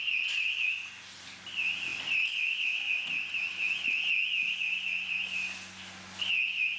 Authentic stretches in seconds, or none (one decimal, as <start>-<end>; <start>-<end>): 0.0-6.8